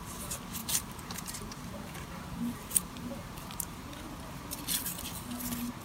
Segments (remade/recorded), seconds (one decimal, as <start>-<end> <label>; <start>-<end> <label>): 0.0-0.6 recorded; 0.6-3.8 remade; 3.8-5.8 recorded